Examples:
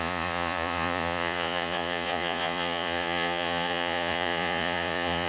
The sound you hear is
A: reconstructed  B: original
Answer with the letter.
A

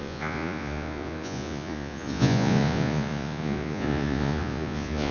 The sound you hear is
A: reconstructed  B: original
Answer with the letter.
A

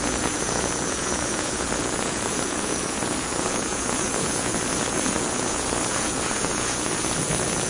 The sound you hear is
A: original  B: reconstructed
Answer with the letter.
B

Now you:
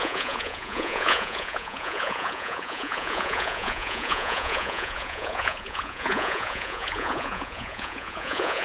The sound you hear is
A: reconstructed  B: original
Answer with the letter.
A